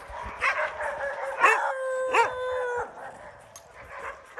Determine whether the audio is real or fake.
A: real